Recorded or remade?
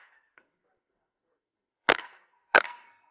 remade